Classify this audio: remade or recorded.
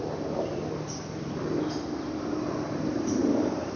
remade